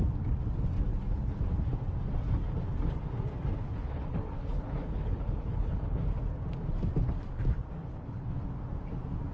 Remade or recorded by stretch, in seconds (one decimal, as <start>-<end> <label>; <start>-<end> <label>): 0.0-0.9 recorded; 0.9-1.4 remade; 1.4-3.6 recorded; 3.6-6.0 remade; 6.0-7.8 recorded; 7.8-8.4 remade; 8.4-9.3 recorded